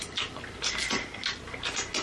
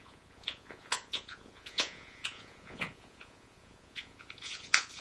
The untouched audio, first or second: first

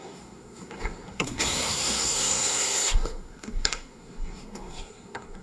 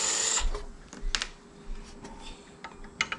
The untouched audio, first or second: second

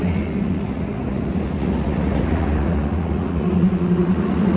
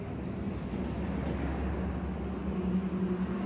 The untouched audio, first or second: second